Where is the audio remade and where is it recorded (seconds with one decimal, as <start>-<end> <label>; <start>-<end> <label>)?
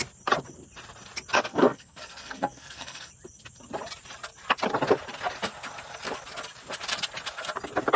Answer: 0.0-1.5 recorded; 1.5-3.1 remade; 3.1-8.0 recorded